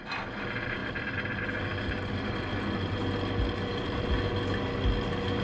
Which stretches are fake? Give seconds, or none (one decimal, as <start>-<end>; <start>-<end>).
none